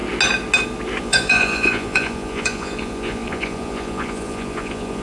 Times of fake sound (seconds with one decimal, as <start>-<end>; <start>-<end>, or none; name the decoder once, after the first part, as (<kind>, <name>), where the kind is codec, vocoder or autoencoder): 1.0-5.0 (vocoder, Vocos)